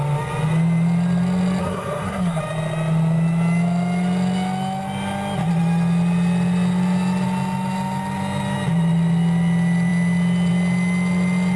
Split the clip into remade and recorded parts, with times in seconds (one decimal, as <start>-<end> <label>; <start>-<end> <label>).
0.0-1.6 recorded; 1.6-2.4 remade; 2.4-11.6 recorded